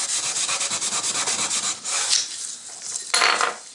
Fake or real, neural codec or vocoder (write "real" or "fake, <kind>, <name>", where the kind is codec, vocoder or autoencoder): real